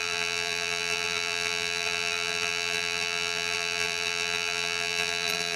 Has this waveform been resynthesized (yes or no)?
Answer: yes